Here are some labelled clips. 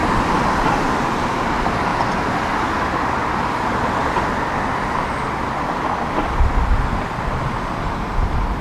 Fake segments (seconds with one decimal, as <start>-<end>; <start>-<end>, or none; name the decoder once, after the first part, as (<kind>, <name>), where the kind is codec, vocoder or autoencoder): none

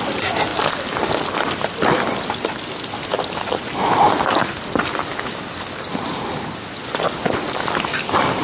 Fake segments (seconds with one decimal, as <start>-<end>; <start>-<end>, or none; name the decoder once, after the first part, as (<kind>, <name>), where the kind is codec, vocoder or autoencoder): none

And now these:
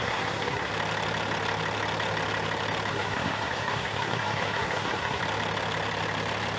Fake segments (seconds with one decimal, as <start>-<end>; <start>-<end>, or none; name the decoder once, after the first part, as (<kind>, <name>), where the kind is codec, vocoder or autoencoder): 0.0-0.7 (codec, SNAC); 2.9-5.2

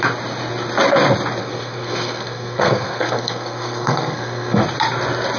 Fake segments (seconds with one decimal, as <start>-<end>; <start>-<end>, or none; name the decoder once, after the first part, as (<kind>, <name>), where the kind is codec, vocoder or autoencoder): 1.4-4.6 (codec, SNAC)

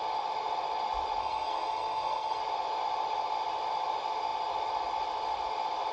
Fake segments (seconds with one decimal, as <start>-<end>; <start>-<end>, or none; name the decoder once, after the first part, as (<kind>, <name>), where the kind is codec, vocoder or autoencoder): 1.2-2.4 (codec, SNAC)

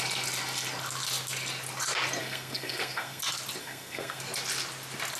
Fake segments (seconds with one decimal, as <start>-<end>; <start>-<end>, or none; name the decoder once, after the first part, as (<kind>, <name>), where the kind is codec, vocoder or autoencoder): 2.2-3.2 (codec, SNAC); 3.6-4.2

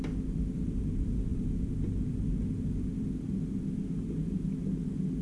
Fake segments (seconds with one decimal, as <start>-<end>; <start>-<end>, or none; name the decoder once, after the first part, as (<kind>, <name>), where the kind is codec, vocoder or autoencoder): none

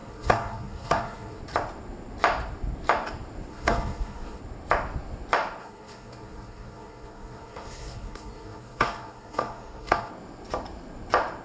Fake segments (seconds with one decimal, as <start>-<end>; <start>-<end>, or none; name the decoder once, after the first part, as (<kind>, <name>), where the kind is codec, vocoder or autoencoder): 0.0-1.4 (codec, SNAC); 3.5-4.4; 5.6-10.1